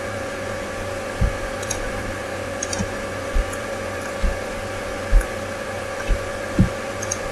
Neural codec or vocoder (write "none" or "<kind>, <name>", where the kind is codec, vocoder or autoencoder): vocoder, Vocos